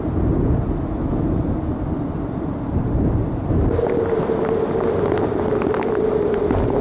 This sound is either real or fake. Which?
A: real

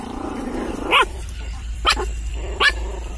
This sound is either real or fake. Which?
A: fake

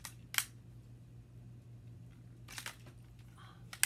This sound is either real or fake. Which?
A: real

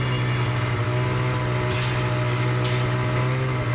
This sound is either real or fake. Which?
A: real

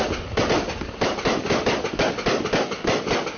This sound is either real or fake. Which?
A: real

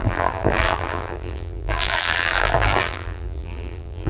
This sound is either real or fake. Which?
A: fake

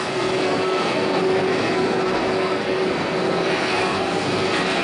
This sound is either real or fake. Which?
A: fake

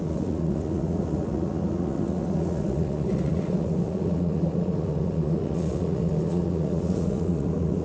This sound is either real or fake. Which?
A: fake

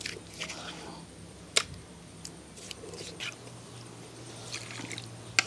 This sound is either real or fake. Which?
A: real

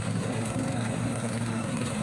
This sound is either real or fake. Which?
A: fake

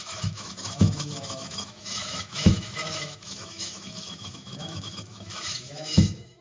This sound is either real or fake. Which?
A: fake